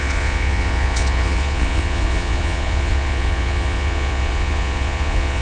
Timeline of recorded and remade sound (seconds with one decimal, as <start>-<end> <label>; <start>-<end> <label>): 0.0-5.4 remade